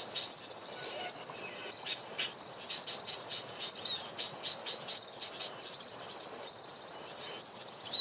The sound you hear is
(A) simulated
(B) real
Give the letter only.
B